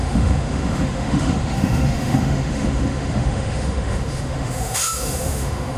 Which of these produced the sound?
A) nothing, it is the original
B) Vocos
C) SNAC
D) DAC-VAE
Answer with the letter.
D